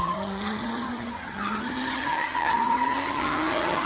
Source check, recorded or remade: remade